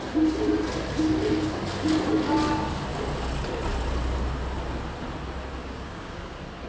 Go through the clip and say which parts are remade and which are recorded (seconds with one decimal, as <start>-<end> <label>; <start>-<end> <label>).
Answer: 0.0-5.6 recorded; 5.6-6.3 remade; 6.3-6.7 recorded